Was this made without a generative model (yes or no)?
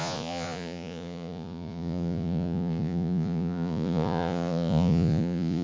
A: no